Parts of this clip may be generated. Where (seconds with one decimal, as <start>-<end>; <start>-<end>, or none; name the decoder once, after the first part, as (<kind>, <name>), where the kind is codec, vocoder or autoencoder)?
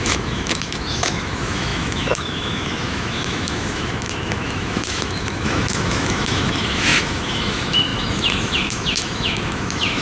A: 0.0-10.0 (autoencoder, DAC-VAE)